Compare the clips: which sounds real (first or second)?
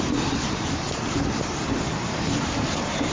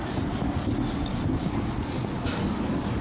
second